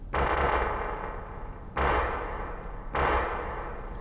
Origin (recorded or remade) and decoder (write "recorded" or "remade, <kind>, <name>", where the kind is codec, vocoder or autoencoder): recorded